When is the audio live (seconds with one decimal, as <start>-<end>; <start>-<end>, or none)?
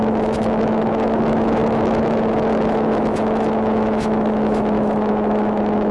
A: none